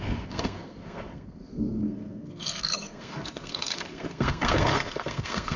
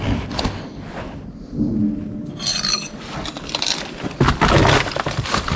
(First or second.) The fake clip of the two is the first